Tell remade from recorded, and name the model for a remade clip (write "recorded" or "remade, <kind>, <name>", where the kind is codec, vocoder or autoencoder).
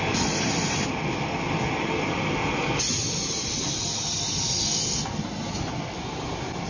recorded